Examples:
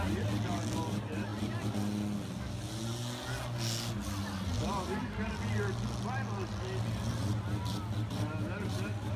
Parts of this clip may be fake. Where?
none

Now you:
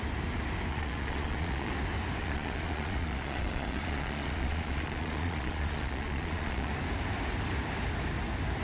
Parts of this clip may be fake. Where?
0.7-1.7 (vocoder, Vocos); 2.2-6.7